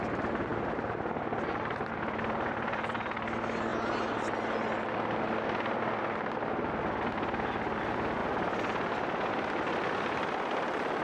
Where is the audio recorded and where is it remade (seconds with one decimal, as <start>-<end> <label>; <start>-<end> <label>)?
0.0-3.7 remade; 3.7-6.7 recorded; 6.7-8.2 remade; 8.2-9.3 recorded; 9.3-11.0 remade